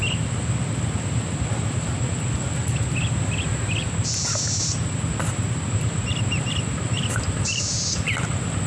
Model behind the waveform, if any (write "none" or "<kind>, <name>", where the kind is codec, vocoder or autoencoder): none